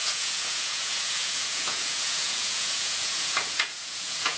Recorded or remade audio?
remade